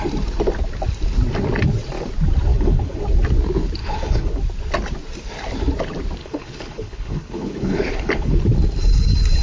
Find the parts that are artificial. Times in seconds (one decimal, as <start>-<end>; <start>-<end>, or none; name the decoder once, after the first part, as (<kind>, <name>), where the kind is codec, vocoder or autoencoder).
2.5-3.0 (codec, HILCodec); 3.8-4.4; 6.2-8.4